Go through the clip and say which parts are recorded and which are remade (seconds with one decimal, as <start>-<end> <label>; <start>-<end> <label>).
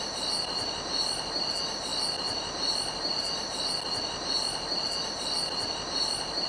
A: 0.0-6.5 recorded